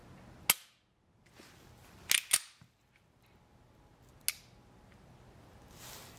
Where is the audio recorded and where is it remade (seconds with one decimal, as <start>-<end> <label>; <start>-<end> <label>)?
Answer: 0.0-6.2 recorded